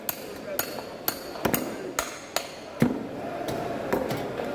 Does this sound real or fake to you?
real